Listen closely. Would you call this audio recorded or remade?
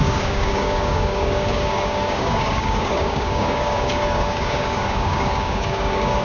remade